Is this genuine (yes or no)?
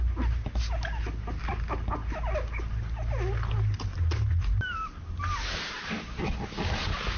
yes